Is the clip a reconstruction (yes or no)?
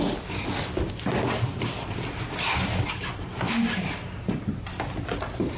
no